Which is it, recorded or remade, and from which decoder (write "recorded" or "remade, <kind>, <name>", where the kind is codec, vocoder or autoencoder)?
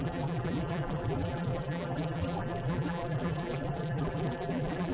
remade, vocoder, BigVGAN v2